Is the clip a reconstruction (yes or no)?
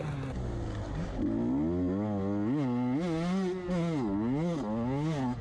no